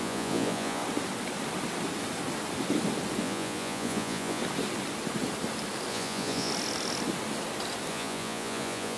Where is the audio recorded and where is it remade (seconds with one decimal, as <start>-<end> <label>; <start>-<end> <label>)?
0.0-0.8 remade; 0.8-3.2 recorded; 3.2-4.4 remade; 4.4-5.9 recorded; 5.9-6.5 remade; 6.5-7.9 recorded; 7.9-9.0 remade